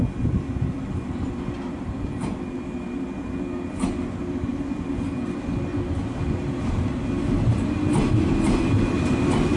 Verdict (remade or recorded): recorded